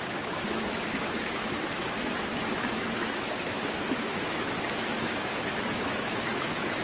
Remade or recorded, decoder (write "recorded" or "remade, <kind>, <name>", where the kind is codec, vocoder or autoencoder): remade, autoencoder, DAC-VAE